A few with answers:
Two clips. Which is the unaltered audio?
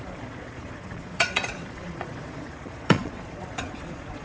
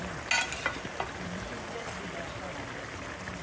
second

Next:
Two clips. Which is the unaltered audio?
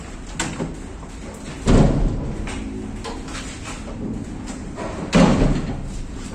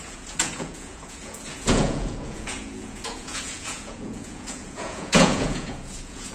first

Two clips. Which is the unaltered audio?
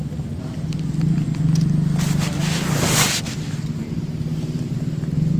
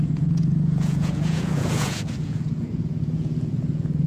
first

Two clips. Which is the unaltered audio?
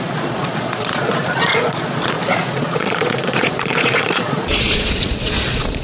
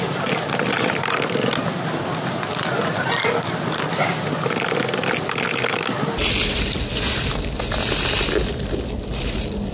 second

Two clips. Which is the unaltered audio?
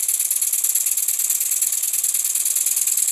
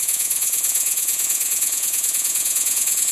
first